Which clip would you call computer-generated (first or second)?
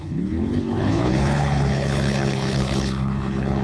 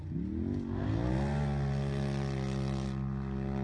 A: first